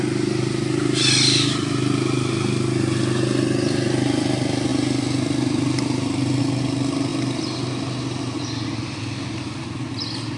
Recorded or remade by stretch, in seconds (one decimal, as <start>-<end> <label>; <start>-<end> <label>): 0.0-10.4 recorded